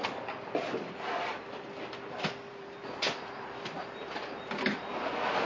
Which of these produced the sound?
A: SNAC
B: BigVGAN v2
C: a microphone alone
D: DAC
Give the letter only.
B